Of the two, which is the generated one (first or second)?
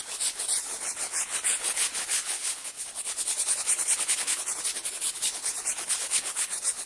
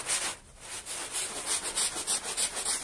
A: first